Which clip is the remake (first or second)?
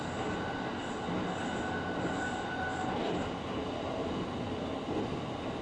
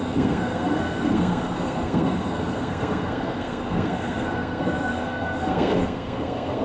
second